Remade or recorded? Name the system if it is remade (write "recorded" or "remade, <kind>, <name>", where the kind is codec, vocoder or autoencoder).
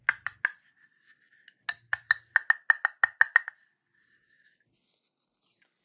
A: recorded